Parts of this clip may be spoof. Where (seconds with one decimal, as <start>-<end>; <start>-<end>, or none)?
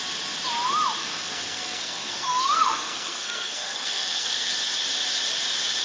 1.0-4.5